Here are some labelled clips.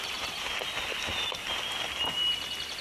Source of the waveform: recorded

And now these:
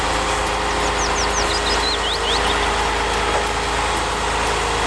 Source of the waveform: recorded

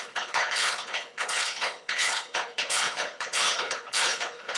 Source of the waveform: remade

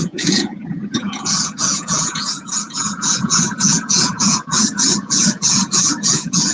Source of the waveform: remade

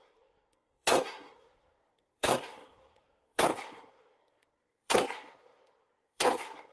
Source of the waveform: remade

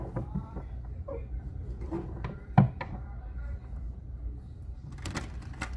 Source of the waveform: remade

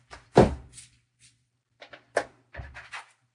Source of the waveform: remade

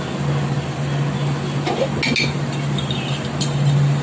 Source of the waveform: recorded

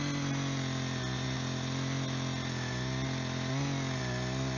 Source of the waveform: recorded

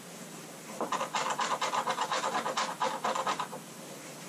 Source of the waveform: recorded